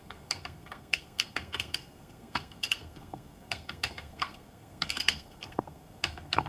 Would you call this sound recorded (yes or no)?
no